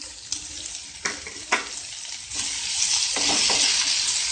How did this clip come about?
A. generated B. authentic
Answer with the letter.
B